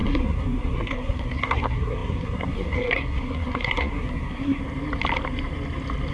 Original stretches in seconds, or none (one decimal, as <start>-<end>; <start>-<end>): 4.6-6.1